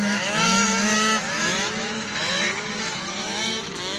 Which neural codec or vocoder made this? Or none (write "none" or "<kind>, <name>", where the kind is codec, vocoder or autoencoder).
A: autoencoder, DAC-VAE